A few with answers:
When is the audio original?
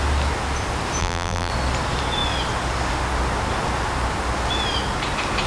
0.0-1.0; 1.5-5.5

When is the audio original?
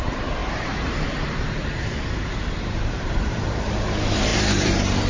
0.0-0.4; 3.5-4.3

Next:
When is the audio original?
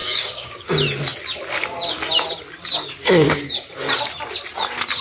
0.7-3.0; 3.5-5.0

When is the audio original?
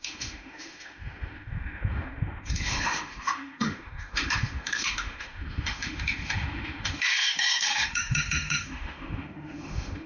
none